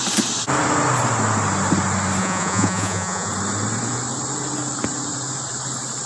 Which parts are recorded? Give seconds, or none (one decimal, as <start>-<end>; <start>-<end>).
0.0-2.2; 3.3-6.0